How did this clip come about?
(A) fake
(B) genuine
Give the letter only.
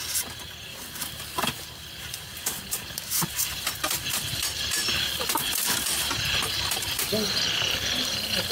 B